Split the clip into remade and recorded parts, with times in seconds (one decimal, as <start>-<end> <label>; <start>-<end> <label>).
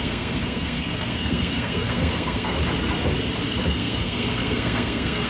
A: 0.0-2.6 remade; 2.6-3.7 recorded; 3.7-5.3 remade